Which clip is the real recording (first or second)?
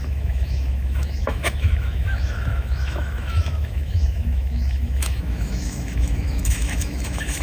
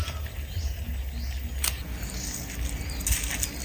second